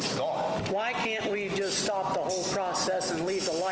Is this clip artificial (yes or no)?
no